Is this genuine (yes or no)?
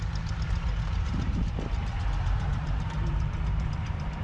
no